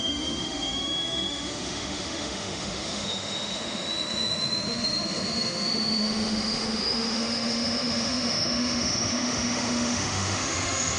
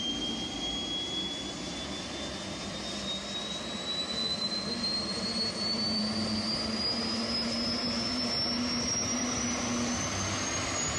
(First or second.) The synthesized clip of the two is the first